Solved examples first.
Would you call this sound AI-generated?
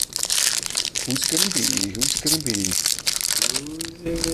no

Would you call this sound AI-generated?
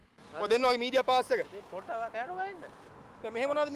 yes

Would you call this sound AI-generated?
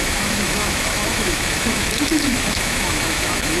yes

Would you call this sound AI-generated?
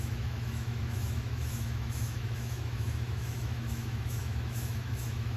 yes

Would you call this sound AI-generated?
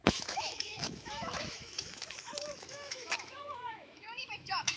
yes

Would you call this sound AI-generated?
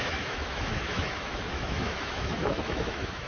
yes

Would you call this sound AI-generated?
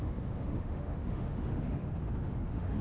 yes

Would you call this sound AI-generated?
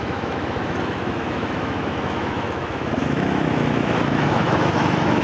yes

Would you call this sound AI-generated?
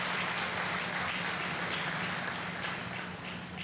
no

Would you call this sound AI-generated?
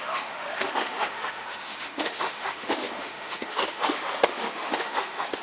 yes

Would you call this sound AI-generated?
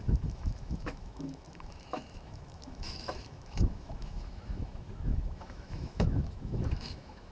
yes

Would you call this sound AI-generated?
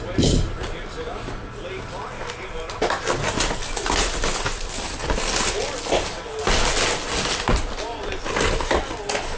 no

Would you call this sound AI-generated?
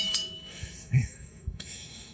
yes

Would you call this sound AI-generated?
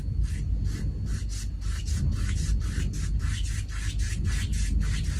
no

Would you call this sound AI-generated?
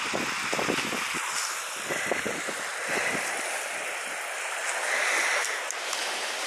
no